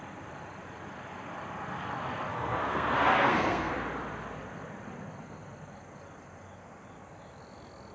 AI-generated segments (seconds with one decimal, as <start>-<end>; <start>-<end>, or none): 2.3-3.7